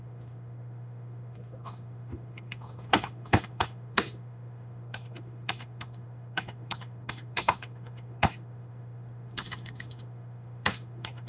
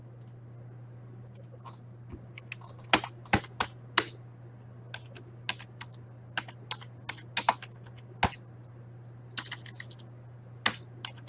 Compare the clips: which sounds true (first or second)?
second